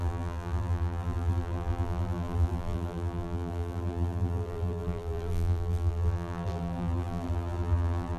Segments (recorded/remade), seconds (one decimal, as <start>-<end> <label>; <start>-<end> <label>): 0.0-8.2 remade